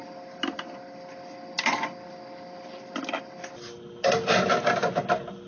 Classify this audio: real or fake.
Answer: real